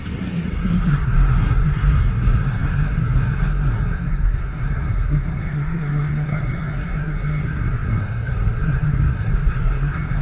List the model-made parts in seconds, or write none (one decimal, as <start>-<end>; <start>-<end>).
0.0-10.2